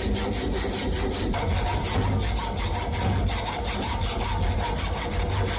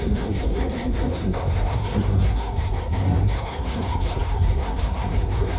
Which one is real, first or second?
first